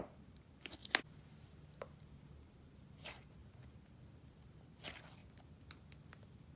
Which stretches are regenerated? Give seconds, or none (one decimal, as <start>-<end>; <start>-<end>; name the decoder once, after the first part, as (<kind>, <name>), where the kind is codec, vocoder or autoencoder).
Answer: none